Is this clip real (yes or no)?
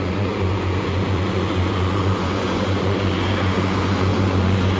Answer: no